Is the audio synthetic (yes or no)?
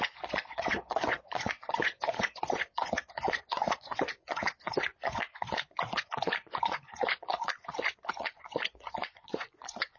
yes